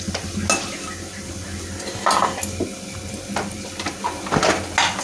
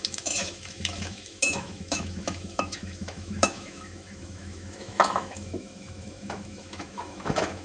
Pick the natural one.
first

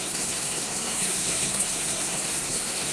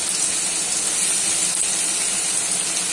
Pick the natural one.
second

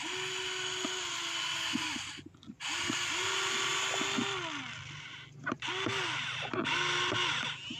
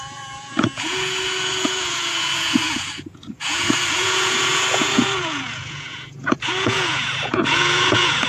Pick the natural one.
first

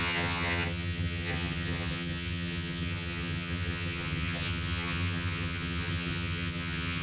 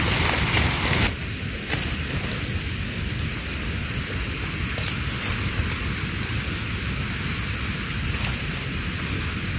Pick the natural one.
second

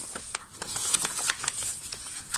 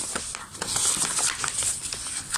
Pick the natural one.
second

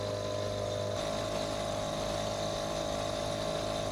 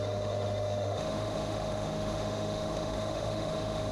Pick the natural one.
first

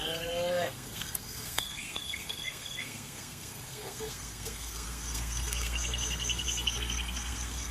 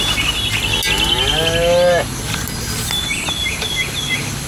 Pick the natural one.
second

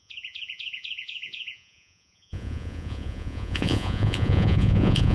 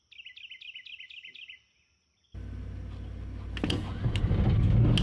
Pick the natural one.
second